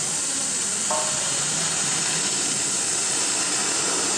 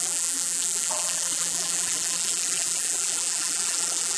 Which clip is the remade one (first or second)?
second